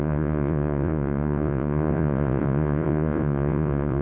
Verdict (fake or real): fake